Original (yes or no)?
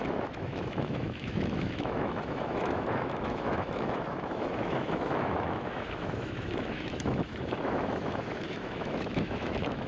no